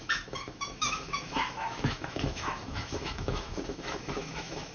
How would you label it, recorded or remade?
remade